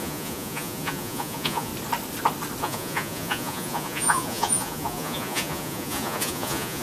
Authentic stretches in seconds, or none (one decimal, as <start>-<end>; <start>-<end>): 1.7-2.6